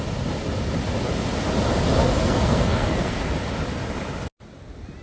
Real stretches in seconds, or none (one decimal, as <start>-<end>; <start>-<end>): 0.0-2.0; 3.2-5.0